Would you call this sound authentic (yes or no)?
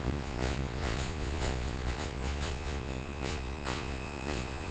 no